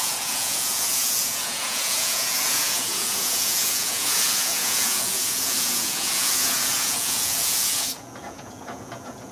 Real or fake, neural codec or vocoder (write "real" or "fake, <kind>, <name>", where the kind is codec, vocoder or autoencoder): fake, vocoder, Vocos